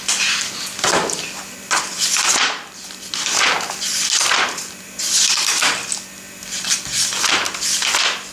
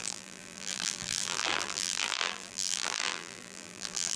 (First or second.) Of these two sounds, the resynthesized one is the second